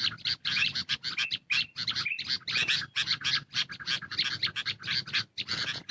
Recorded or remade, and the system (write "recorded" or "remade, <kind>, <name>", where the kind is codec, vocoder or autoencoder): recorded